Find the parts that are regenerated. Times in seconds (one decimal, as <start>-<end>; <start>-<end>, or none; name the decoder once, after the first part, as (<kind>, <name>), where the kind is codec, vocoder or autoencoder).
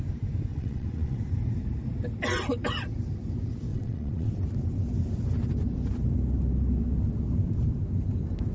0.5-1.2 (vocoder, WaveNeXt); 3.7-4.3